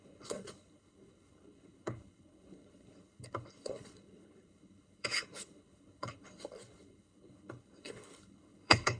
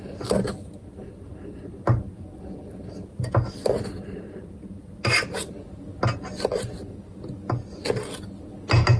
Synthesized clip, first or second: first